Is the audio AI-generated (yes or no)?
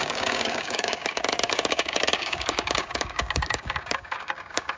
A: yes